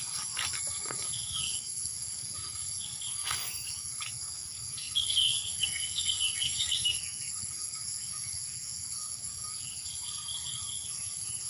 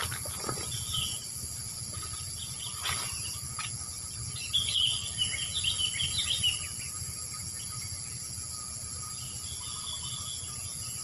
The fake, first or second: first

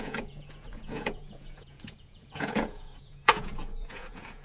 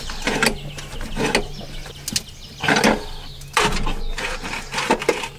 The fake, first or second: first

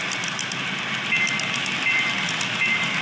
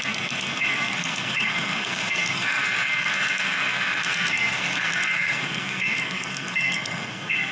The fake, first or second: second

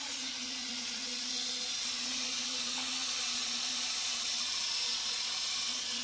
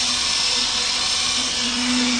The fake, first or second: first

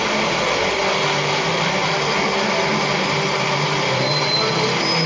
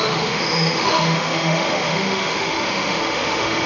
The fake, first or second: second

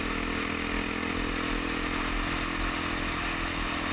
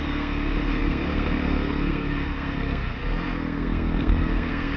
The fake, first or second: second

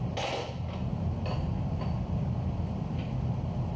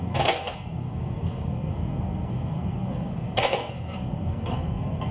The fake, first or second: second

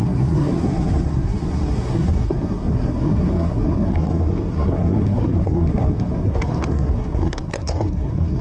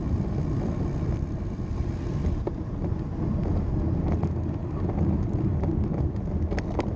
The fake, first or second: first